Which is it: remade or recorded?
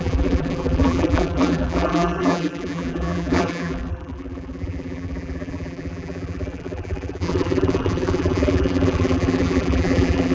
remade